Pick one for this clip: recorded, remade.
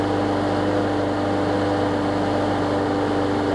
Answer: recorded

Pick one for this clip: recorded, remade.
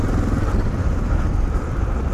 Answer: recorded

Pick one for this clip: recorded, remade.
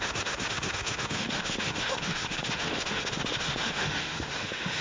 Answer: remade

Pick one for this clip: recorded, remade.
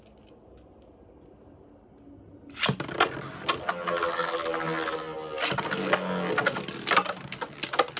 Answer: recorded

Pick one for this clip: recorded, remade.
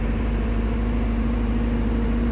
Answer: remade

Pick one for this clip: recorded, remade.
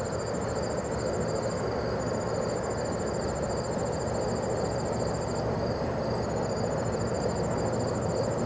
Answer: recorded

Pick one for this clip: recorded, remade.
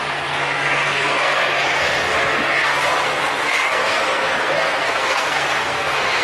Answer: remade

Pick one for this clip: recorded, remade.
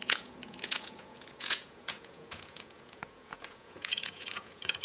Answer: remade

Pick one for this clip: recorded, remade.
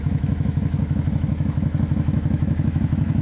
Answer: remade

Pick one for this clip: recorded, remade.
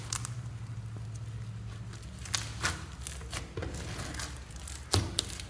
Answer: recorded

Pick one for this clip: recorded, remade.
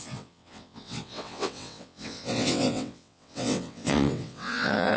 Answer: remade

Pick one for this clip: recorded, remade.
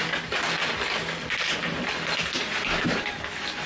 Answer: recorded